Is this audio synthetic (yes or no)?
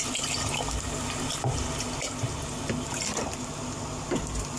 no